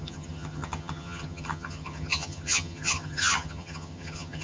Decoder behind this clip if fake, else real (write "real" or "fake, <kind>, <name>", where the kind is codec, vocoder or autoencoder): fake, vocoder, HiFi-GAN